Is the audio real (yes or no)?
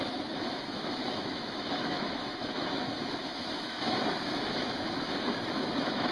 no